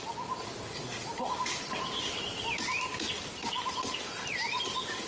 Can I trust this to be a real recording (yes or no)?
yes